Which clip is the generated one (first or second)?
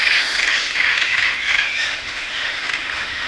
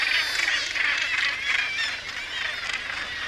first